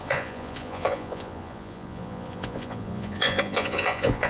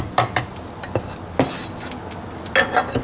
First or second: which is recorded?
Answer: second